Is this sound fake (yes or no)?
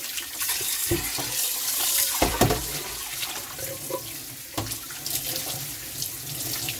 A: yes